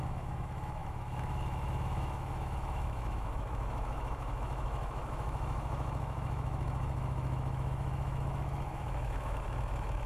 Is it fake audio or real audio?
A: fake